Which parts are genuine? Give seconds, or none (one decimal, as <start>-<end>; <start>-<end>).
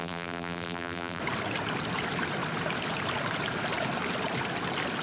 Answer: 1.2-5.0